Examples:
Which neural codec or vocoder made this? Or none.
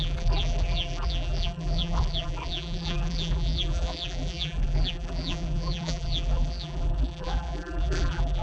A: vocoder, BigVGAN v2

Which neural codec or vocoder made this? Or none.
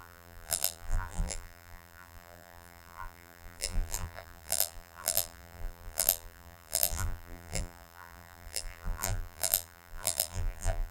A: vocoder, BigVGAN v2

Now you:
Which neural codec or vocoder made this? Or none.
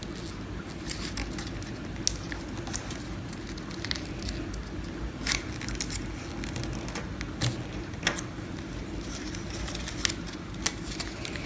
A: none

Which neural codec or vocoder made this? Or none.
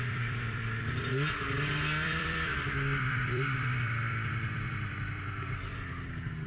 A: vocoder, BigVGAN v2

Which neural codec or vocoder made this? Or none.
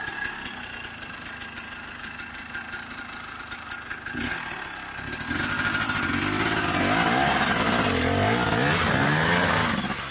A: none